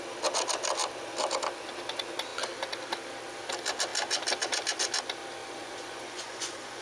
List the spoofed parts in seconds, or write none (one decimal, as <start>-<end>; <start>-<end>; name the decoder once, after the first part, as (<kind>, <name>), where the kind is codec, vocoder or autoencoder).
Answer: 5.4-6.8 (vocoder, Vocos)